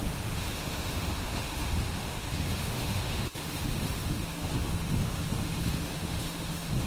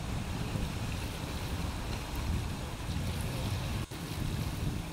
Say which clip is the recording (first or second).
second